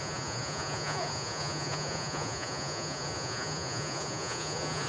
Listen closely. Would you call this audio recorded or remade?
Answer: remade